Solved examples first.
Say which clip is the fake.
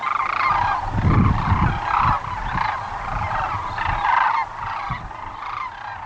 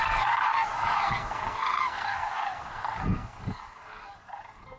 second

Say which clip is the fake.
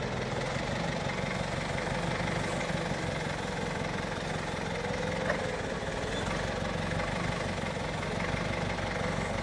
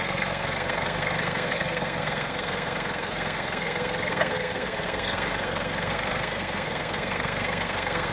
second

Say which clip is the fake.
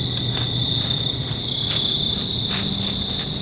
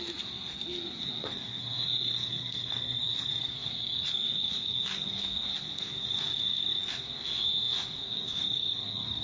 second